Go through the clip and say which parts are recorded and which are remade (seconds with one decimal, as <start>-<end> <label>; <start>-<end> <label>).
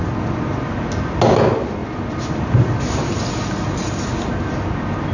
0.0-5.1 recorded